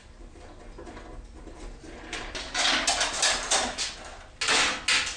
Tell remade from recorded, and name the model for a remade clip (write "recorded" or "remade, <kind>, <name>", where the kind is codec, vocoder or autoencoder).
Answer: recorded